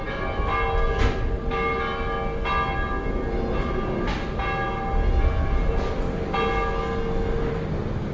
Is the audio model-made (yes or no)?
no